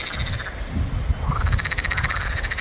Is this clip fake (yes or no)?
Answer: no